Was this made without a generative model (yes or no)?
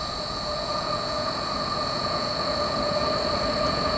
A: no